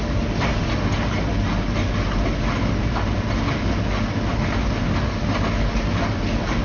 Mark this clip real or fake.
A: real